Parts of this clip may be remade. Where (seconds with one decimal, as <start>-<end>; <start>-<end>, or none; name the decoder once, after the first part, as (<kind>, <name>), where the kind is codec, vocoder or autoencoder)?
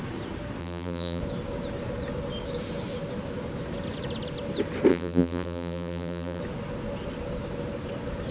0.6-1.2 (vocoder, BigVGAN v2); 4.9-6.4